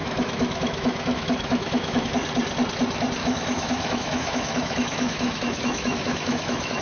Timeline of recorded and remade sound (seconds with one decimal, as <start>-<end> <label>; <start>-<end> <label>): 0.0-2.1 remade; 2.1-3.2 recorded; 3.2-6.8 remade

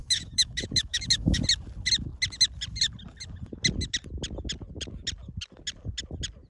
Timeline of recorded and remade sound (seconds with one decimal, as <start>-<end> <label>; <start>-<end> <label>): 0.0-1.4 remade; 1.4-6.5 recorded